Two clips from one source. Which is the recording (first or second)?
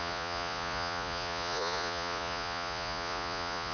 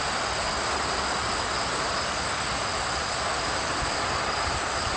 second